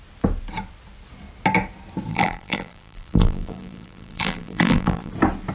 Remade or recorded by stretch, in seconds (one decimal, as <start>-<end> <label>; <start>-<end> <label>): 0.0-2.1 recorded; 2.1-5.1 remade; 5.1-5.5 recorded

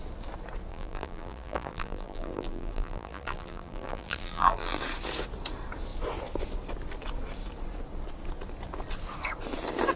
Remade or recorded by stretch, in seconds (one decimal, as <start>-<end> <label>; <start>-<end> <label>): 0.0-0.7 recorded; 0.7-4.8 remade; 4.8-10.0 recorded

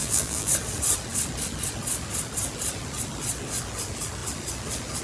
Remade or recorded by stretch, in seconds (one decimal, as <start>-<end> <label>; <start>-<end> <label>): 0.0-0.5 remade; 0.5-5.0 recorded

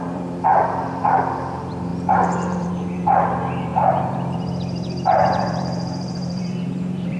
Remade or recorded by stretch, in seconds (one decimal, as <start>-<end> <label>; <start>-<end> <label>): 0.0-7.2 remade

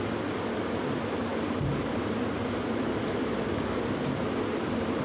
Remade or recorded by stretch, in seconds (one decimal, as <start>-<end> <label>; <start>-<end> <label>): 0.0-1.3 remade; 1.3-4.3 recorded; 4.3-5.0 remade